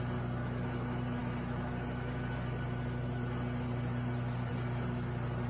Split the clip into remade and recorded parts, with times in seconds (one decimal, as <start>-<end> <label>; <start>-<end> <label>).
0.0-5.5 recorded